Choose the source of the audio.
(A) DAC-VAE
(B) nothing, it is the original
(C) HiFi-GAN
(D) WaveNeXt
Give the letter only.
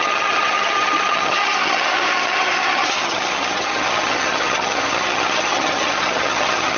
C